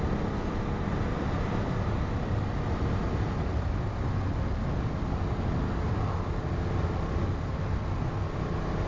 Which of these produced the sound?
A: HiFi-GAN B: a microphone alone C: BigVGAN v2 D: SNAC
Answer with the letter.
B